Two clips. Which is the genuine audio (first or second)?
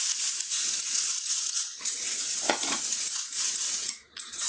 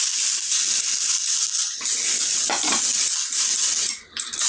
second